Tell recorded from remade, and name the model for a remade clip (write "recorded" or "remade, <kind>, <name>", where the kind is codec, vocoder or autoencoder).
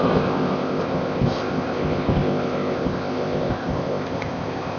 remade, codec, ZipCodec